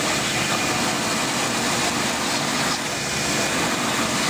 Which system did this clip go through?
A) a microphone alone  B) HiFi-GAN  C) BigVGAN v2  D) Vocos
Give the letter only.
A